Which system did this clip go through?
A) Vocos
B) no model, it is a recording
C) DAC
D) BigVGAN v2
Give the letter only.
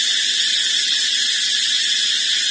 B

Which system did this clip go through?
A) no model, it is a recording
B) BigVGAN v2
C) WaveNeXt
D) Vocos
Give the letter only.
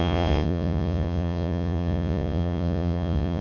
D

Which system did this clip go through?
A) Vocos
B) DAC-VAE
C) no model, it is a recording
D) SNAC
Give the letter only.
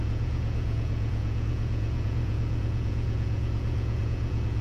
A